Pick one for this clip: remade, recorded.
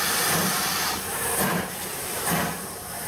remade